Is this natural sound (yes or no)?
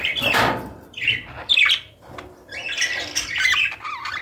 no